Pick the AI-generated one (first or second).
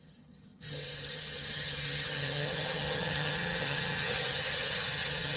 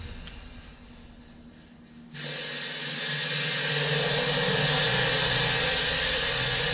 first